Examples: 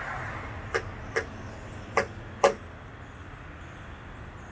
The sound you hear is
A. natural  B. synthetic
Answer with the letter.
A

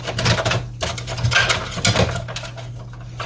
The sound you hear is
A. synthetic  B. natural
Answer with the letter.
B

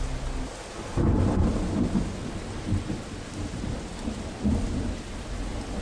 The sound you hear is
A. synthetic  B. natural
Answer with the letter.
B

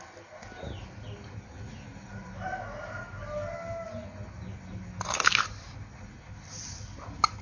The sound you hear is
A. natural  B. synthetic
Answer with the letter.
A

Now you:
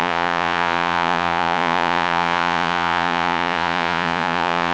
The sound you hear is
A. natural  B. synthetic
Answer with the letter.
B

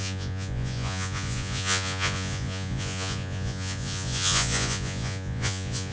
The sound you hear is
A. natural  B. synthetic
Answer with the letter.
B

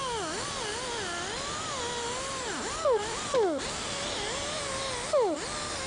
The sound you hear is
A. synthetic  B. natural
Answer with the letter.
B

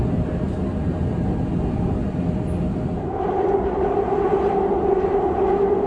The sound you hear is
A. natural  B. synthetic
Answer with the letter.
A